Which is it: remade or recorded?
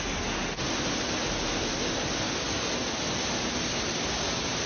recorded